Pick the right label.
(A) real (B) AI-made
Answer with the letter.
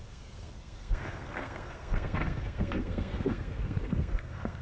B